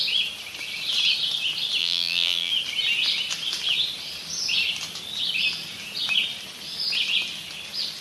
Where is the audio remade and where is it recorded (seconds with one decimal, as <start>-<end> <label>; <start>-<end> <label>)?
0.0-1.8 recorded; 1.8-2.5 remade; 2.5-8.0 recorded